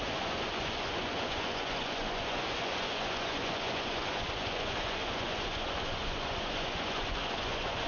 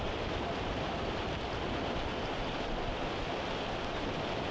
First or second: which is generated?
first